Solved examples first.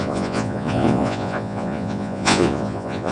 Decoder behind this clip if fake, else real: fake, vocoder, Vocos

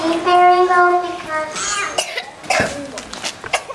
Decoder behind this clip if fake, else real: real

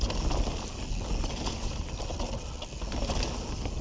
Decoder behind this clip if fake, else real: real